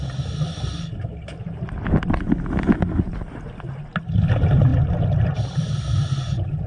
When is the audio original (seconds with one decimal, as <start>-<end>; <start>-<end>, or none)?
0.0-6.7